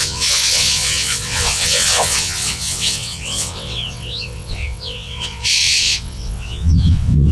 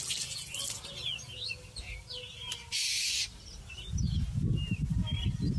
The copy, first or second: first